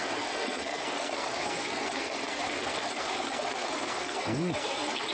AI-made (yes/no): yes